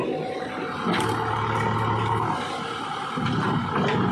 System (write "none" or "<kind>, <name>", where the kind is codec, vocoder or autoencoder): none